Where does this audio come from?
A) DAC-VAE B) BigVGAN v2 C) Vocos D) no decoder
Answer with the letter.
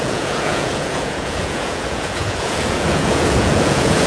C